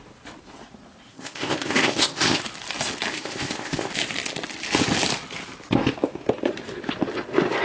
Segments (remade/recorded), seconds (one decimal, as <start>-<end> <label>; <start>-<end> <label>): 0.0-1.1 recorded; 1.1-2.4 remade; 2.4-3.1 recorded; 3.1-3.9 remade; 3.9-7.6 recorded